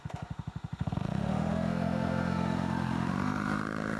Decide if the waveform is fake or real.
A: fake